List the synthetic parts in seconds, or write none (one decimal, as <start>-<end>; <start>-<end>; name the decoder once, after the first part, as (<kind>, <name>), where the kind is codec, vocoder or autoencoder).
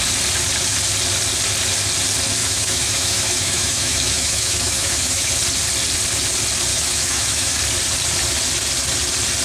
2.4-5.3 (autoencoder, DAC-VAE); 6.7-7.6